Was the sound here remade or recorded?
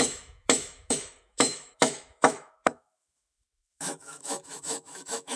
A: remade